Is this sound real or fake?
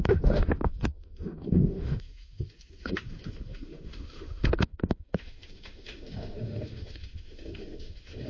fake